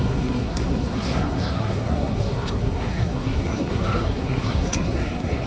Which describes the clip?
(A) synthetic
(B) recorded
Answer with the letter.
A